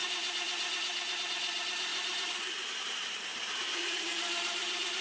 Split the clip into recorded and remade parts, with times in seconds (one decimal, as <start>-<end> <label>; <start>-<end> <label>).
0.0-1.2 remade; 1.2-1.9 recorded; 1.9-5.0 remade